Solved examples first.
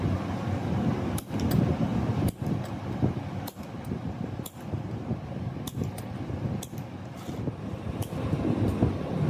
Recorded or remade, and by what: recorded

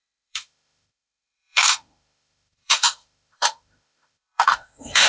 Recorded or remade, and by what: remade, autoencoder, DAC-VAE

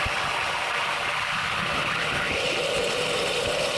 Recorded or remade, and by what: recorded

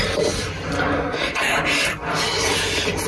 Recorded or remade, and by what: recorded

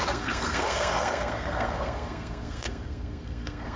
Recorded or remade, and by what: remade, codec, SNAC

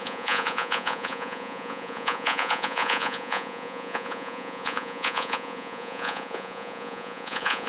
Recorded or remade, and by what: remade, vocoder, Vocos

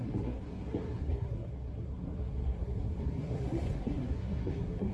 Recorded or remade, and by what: remade, codec, SNAC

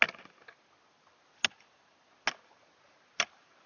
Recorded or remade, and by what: recorded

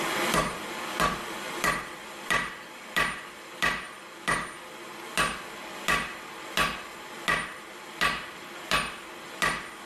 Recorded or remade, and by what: recorded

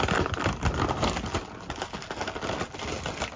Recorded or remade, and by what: recorded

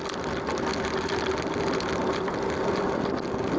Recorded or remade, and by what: remade, vocoder, BigVGAN v2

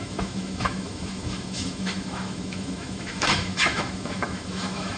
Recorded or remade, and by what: remade, autoencoder, DAC-VAE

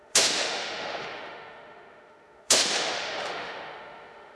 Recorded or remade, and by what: remade, autoencoder, DAC-VAE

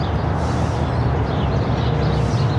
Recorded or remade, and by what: recorded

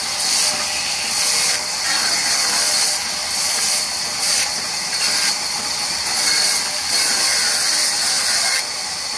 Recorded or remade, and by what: recorded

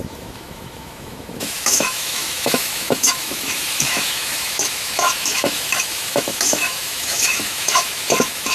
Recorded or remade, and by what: remade, autoencoder, DAC-VAE